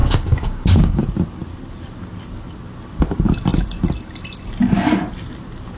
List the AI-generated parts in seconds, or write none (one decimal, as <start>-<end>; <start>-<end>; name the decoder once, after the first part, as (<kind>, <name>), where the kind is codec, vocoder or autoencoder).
0.0-1.0 (codec, DAC)